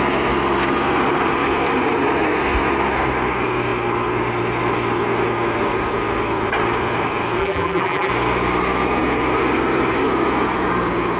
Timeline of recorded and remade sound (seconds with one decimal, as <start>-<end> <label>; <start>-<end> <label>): 0.0-7.4 recorded; 7.4-8.1 remade; 8.1-11.2 recorded